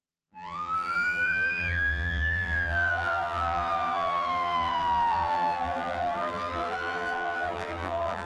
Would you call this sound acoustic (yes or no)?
no